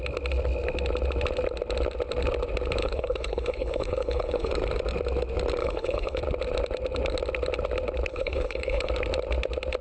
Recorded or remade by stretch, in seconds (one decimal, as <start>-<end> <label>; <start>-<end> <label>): 0.0-2.8 recorded; 2.8-4.5 remade; 4.5-5.6 recorded; 5.6-6.2 remade; 6.2-8.1 recorded; 8.1-8.9 remade; 8.9-9.8 recorded